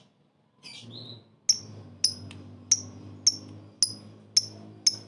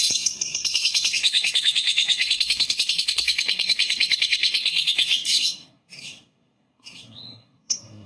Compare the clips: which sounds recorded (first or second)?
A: first